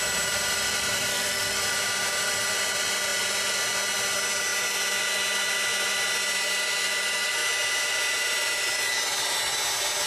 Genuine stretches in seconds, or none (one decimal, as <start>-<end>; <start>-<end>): 0.0-1.1; 1.6-10.1